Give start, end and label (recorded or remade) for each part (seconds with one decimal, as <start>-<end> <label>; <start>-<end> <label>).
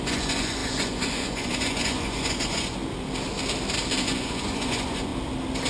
0.0-2.8 remade; 2.8-4.0 recorded; 4.0-5.1 remade; 5.1-5.7 recorded